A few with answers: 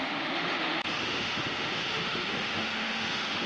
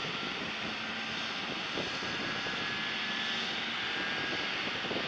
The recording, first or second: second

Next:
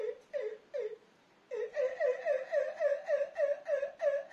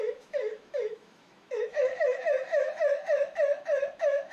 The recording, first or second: first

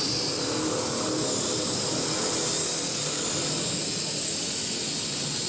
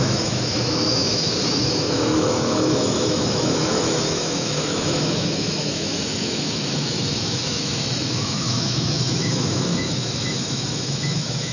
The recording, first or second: first